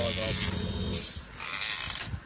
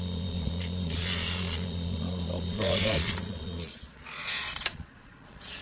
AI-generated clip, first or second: second